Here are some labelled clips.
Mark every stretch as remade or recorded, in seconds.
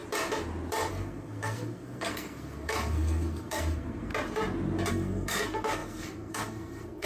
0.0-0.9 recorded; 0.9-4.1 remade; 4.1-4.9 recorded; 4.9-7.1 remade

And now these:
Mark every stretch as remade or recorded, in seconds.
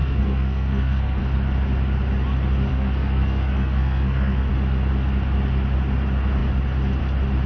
0.0-1.2 remade; 1.2-2.7 recorded; 2.7-4.5 remade; 4.5-7.5 recorded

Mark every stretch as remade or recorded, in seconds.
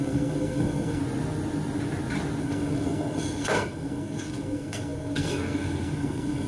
0.0-1.0 remade; 1.0-2.4 recorded; 2.4-6.5 remade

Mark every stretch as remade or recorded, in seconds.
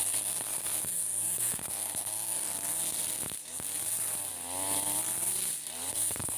0.0-2.5 remade; 2.5-5.9 recorded; 5.9-6.4 remade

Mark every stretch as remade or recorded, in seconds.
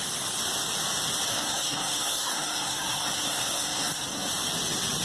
0.0-1.3 recorded; 1.3-4.3 remade; 4.3-5.0 recorded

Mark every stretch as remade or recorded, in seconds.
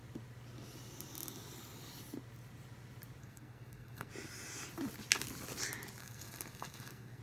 0.0-3.2 recorded; 3.2-4.1 remade; 4.1-6.0 recorded; 6.0-7.2 remade